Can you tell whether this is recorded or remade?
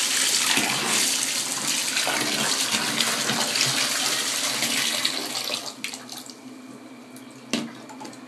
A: recorded